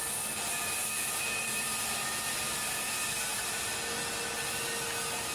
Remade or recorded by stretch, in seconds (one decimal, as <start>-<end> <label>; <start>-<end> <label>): 0.0-0.8 recorded; 0.8-4.0 remade; 4.0-5.3 recorded